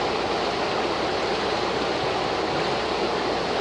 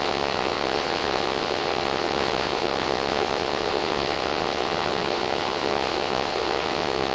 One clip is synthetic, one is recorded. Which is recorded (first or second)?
first